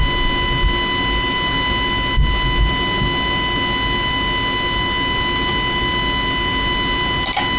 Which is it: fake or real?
real